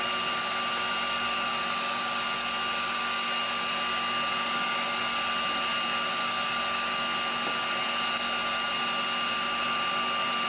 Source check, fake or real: real